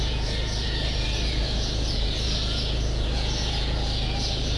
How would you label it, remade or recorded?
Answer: remade